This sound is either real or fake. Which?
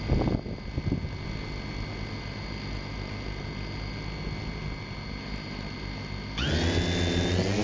real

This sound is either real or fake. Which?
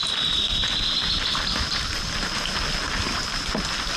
real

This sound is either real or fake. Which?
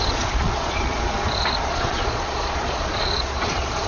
fake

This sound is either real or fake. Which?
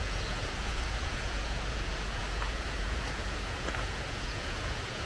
fake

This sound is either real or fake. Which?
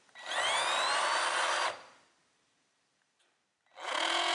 real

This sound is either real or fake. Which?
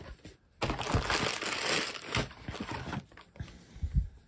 real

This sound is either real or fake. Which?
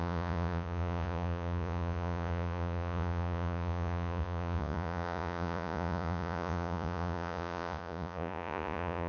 fake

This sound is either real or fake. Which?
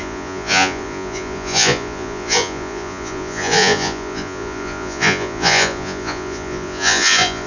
fake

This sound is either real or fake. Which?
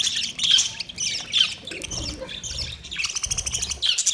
real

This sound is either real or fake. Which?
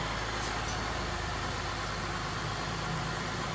real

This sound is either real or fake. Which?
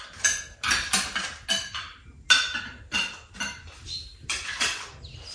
real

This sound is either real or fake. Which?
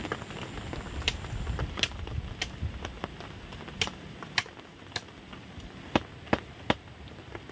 real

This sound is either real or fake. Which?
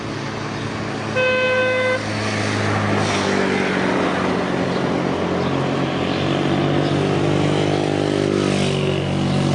real